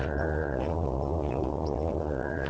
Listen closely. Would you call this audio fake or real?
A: fake